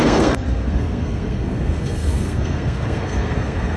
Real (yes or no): no